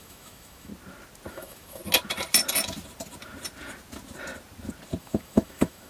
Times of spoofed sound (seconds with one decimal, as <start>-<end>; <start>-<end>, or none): 0.0-0.7; 1.3-1.8; 5.0-5.9